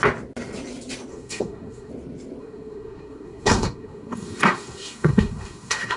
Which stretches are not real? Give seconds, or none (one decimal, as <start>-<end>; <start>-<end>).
1.1-1.9; 2.4-6.0